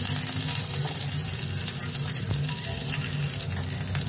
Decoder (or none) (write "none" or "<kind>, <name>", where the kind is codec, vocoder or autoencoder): none